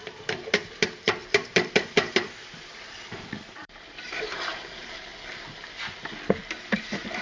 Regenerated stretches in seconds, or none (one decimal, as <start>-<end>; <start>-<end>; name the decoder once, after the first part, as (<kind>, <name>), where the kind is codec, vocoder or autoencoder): 0.0-5.1 (vocoder, BigVGAN v2); 6.5-7.2